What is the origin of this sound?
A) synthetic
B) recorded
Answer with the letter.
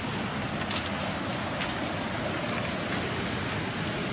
B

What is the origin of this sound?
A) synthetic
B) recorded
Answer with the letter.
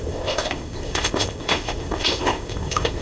A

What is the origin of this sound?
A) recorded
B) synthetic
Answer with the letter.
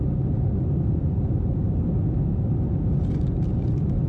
A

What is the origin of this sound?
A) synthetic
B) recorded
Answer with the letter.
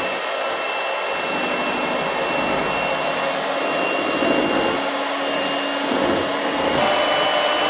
B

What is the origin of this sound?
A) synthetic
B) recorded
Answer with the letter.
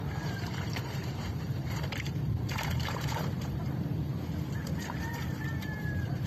A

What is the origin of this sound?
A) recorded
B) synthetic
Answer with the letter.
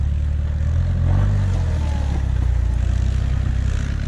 A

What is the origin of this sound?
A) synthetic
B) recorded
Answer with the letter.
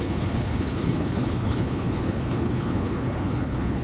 A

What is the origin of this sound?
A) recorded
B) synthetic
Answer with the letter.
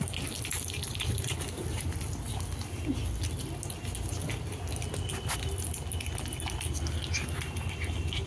A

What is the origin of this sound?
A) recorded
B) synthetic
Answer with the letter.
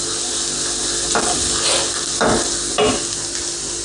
A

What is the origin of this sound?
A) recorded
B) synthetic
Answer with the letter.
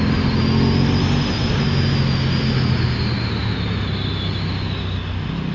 A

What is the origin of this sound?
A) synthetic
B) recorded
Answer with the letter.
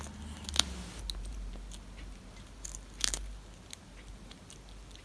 B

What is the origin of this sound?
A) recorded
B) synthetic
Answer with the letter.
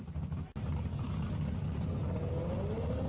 A